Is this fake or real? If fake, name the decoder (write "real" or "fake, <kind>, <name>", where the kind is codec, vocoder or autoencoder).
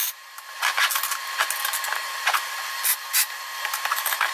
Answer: real